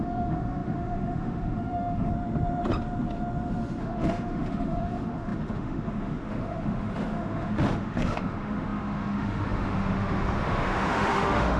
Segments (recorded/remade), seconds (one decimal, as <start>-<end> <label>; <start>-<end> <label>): 0.0-2.1 remade; 2.1-3.8 recorded; 3.8-11.6 remade